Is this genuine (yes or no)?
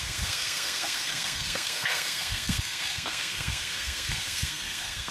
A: no